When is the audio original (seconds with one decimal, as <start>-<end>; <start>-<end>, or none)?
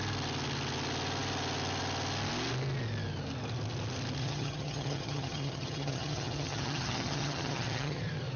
0.0-4.2; 8.0-8.4